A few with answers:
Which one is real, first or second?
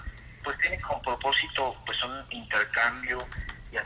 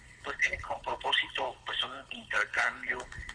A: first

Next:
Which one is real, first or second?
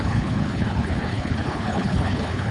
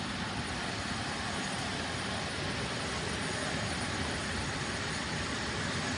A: second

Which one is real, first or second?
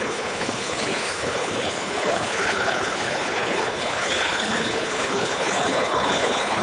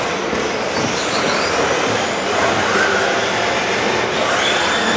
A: second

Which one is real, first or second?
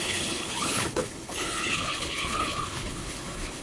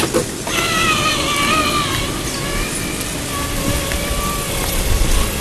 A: second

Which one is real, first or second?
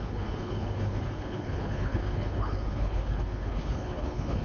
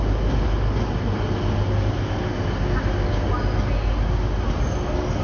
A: second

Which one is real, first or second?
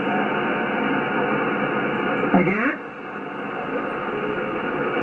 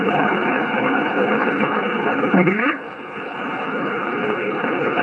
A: first